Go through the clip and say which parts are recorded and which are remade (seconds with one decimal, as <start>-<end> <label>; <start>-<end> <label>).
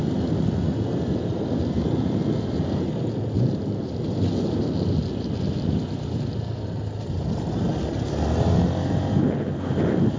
0.0-10.2 recorded